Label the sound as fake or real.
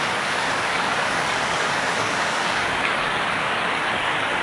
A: fake